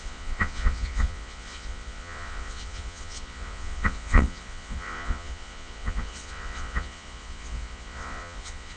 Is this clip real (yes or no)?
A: no